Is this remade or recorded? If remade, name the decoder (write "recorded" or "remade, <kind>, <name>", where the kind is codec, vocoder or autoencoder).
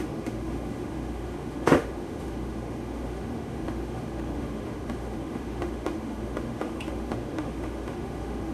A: remade, autoencoder, DAC-VAE